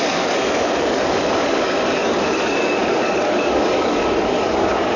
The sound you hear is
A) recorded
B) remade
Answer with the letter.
B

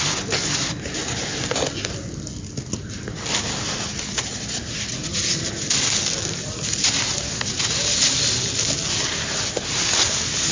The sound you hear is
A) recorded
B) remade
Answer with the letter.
A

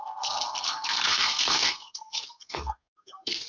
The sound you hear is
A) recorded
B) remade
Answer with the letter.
B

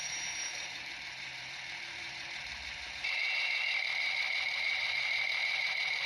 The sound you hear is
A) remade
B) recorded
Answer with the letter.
A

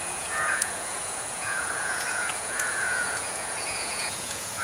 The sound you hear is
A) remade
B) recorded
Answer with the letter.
A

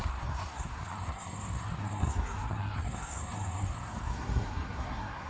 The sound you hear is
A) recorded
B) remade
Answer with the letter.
B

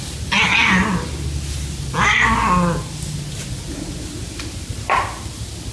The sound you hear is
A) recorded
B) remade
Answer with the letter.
A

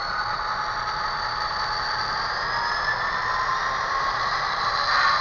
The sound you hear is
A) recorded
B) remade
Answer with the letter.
A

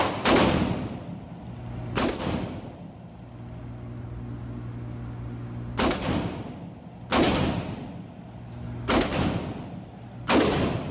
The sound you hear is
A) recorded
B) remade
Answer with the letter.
A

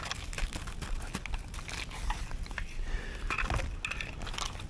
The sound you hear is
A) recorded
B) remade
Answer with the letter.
A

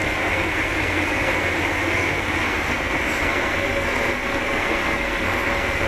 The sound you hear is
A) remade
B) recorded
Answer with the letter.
A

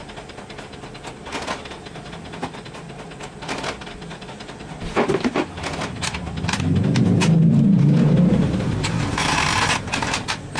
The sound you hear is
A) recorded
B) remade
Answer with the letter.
A